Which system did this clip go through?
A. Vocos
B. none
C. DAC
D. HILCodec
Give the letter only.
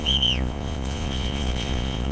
A